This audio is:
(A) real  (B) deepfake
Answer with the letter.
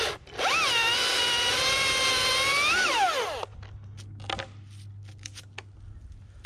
A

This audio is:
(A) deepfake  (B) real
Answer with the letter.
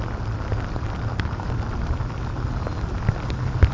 B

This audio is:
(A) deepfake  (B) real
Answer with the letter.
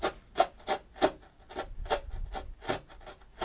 B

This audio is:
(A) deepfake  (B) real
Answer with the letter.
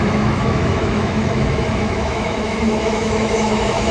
A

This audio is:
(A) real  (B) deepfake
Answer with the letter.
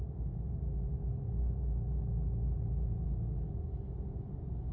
A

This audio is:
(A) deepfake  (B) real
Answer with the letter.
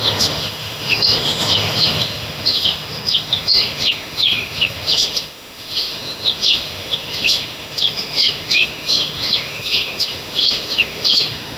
A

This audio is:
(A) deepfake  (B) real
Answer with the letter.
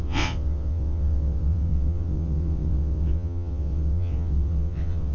A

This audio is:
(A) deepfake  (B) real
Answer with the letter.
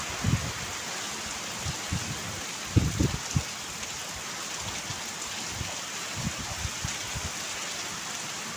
B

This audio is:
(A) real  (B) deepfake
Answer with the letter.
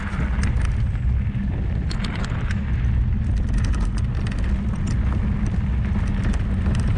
A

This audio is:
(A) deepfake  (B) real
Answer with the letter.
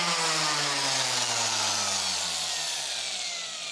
B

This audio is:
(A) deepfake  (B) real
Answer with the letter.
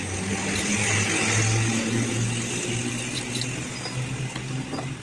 B